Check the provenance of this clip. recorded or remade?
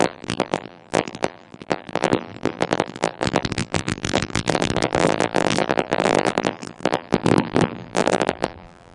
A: remade